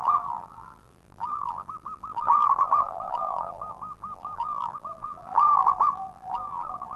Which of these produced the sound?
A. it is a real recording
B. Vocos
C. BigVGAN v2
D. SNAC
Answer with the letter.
C